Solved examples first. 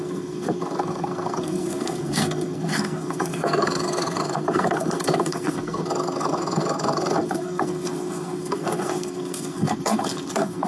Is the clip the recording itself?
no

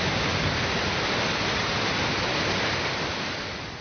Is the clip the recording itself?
yes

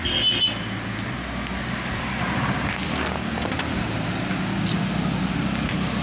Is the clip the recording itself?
yes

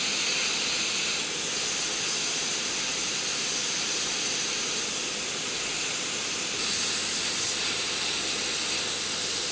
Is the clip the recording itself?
yes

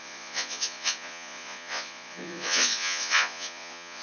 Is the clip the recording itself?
no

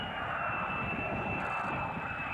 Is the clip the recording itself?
yes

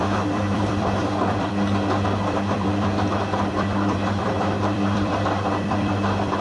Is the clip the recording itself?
no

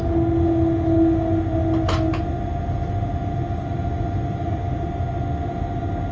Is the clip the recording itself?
yes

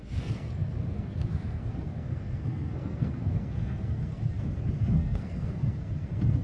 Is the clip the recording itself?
no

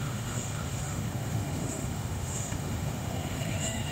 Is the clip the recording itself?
no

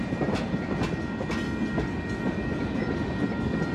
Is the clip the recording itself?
yes